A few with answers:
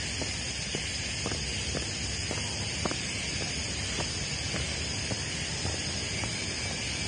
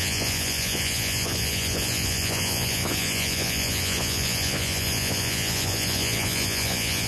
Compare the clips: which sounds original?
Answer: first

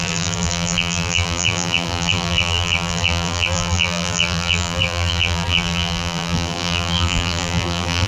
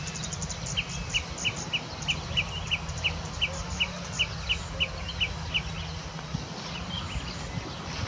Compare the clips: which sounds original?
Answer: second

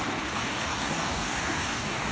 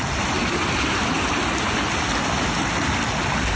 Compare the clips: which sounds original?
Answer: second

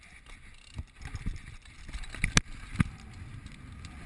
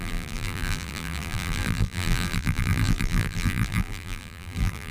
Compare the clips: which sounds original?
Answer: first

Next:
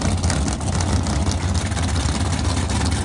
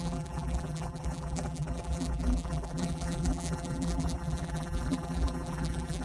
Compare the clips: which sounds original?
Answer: first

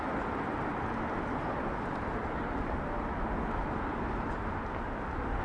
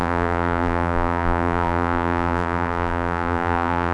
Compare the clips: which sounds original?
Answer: first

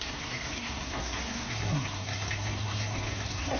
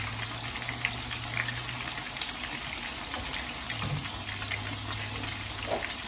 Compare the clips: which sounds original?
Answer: second